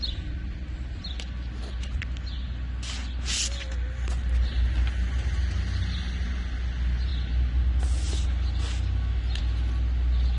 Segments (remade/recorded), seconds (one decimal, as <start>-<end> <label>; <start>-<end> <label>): 0.0-10.4 recorded